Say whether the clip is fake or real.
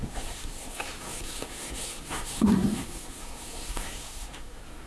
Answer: fake